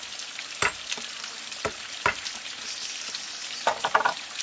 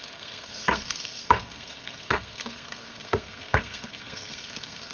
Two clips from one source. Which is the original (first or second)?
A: first